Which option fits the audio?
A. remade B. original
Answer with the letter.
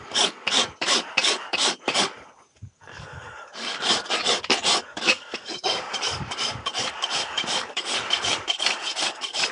A